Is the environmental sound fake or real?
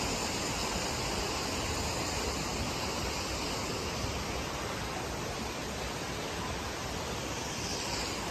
real